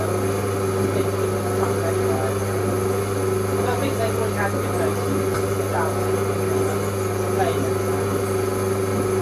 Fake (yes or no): no